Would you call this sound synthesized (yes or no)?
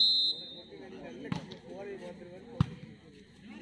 no